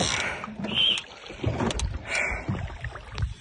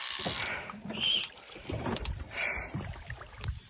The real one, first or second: first